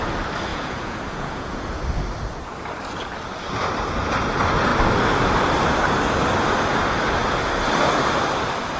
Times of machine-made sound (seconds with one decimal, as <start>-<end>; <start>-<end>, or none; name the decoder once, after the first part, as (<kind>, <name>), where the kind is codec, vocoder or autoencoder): 0.5-1.8 (vocoder, Vocos)